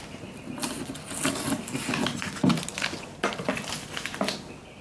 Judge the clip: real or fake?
real